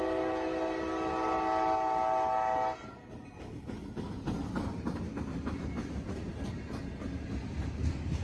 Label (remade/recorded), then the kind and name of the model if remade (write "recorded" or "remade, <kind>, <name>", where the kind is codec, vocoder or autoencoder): recorded